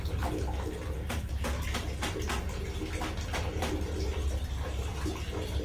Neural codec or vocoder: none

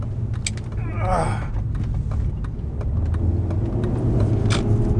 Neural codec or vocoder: none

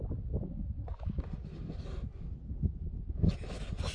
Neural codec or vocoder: none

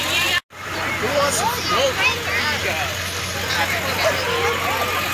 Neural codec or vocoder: none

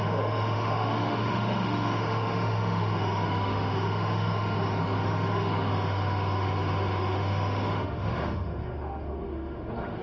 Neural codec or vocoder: autoencoder, DAC-VAE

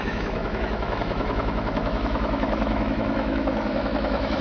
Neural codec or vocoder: autoencoder, DAC-VAE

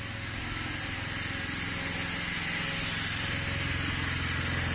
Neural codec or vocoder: none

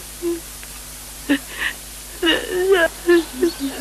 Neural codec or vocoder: none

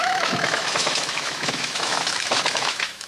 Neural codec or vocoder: autoencoder, DAC-VAE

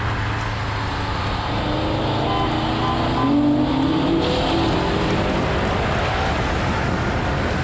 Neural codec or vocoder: none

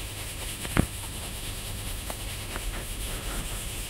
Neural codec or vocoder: autoencoder, DAC-VAE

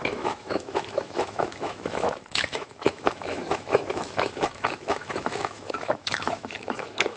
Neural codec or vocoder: autoencoder, DAC-VAE